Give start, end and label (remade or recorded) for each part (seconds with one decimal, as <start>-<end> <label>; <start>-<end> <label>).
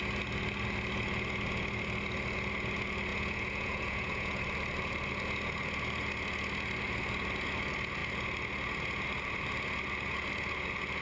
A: 0.0-3.1 recorded; 3.1-4.4 remade; 4.4-11.0 recorded